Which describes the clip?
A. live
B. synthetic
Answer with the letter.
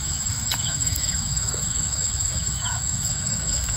B